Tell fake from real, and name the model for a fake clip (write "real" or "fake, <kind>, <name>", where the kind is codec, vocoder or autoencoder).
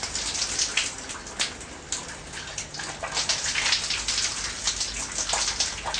real